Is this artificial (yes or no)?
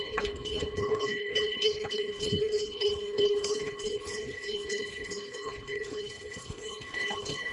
yes